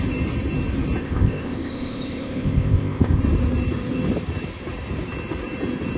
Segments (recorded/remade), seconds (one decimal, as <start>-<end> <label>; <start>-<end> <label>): 0.0-1.0 recorded; 1.0-3.2 remade; 3.2-6.0 recorded